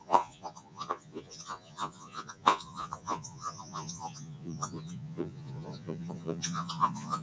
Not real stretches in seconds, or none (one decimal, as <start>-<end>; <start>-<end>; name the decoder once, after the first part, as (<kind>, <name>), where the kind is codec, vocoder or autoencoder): 0.0-7.2 (vocoder, Vocos)